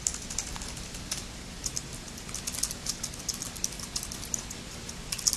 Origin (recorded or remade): recorded